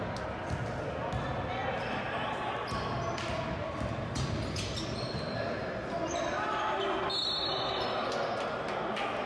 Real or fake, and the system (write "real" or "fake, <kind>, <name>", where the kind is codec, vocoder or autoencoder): real